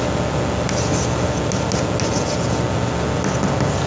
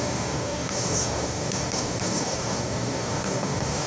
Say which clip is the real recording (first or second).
first